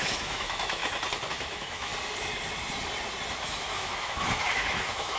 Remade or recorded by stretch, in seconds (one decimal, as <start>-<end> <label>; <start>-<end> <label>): 0.0-0.8 remade; 0.8-1.3 recorded; 1.3-1.9 remade; 1.9-3.4 recorded; 3.4-5.2 remade